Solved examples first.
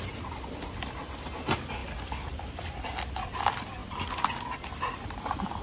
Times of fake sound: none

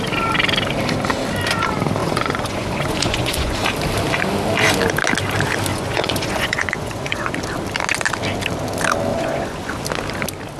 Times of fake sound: 2.0-3.6; 5.7-7.3; 9.1-9.8

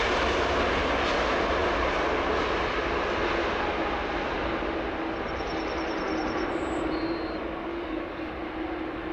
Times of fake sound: 7.7-8.3

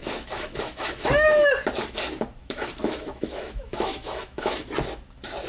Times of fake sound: 0.0-1.6; 2.4-4.6

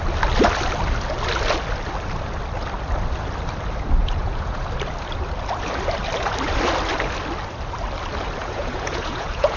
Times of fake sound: 4.0-4.6; 8.4-9.6

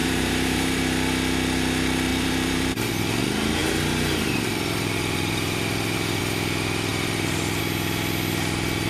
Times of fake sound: 0.0-0.8; 2.1-2.9; 3.6-6.2; 6.9-7.6